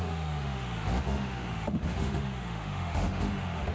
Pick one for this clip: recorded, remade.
remade